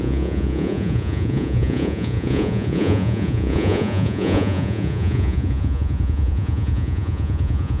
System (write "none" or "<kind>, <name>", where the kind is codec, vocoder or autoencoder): vocoder, Vocos